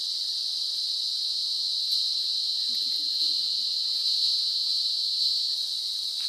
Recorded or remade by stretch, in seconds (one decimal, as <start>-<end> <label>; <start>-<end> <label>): 0.0-6.3 recorded